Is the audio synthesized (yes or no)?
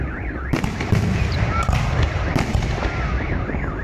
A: no